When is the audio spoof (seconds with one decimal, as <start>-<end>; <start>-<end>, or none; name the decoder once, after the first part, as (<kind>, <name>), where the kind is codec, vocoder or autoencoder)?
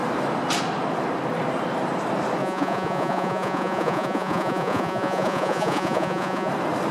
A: 2.4-6.5 (vocoder, Vocos)